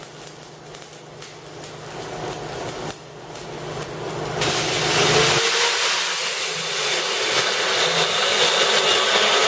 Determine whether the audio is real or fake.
real